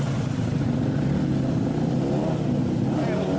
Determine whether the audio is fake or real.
real